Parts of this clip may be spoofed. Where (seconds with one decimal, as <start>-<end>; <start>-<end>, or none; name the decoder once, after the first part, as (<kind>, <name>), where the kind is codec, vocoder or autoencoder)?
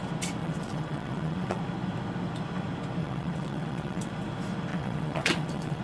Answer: 0.4-1.6 (vocoder, WaveNeXt); 3.0-4.1; 4.7-5.8